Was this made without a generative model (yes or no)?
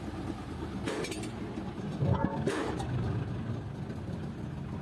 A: yes